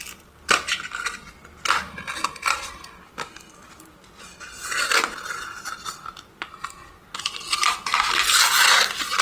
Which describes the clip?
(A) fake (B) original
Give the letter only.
B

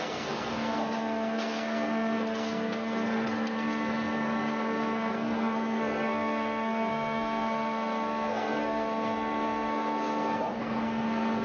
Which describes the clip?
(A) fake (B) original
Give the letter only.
A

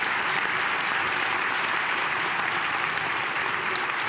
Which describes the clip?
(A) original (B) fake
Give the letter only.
B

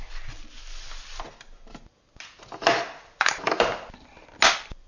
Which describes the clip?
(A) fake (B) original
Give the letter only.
B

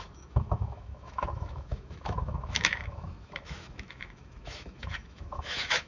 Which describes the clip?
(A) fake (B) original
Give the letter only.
A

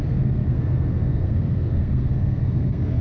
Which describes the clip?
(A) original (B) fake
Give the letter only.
B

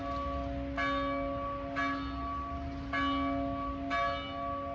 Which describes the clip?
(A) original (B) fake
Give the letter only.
A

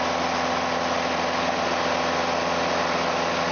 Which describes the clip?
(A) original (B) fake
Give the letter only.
A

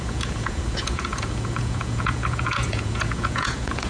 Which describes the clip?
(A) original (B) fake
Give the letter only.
B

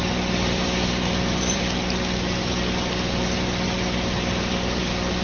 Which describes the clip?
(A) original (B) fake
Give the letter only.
B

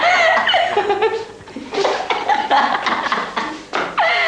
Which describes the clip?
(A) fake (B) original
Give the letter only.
B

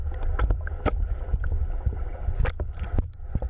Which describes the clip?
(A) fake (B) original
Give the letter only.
B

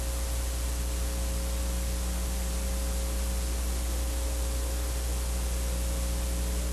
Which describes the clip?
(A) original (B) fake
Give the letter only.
A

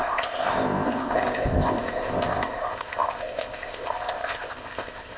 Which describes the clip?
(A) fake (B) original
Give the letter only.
A